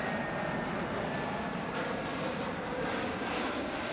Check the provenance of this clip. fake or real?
real